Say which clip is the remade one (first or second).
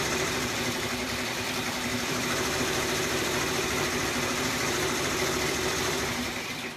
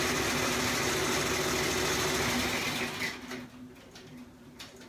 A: first